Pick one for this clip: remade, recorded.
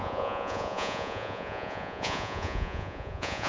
remade